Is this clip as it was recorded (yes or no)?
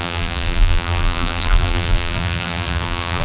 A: no